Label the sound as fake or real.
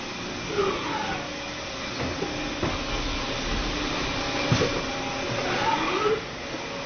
real